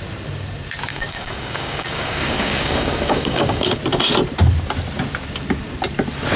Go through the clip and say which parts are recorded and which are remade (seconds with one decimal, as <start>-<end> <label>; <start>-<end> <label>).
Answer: 0.0-0.9 recorded; 0.9-3.8 remade; 3.8-6.4 recorded